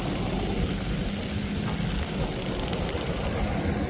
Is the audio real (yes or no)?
yes